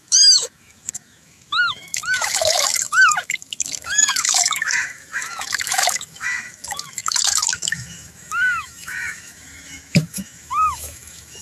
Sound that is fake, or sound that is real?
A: fake